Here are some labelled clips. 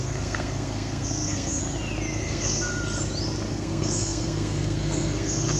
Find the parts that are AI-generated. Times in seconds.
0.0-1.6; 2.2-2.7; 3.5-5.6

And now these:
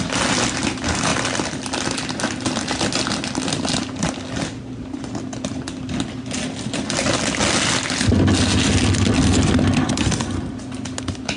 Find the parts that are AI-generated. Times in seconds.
none

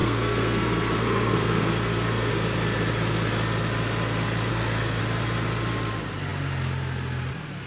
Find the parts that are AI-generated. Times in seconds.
0.0-2.3; 4.5-5.0